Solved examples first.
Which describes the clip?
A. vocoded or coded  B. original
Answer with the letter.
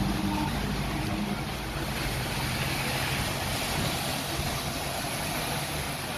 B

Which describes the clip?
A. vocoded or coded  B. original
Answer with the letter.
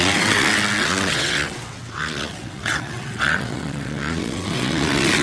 A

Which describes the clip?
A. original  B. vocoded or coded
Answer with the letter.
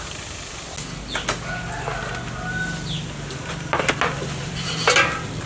A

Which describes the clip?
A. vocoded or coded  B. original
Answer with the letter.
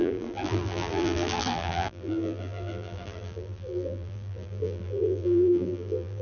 A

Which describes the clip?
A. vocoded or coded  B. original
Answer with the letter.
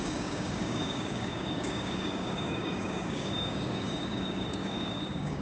A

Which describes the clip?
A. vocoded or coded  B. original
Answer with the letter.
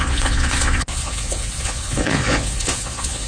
A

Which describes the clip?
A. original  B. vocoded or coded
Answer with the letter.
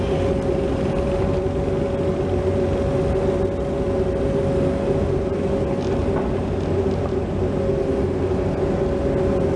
A